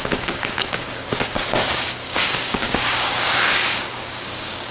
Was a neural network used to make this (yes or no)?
yes